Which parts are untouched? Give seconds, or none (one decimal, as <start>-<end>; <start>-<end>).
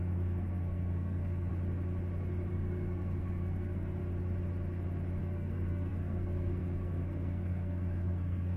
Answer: 1.5-2.5; 4.0-5.2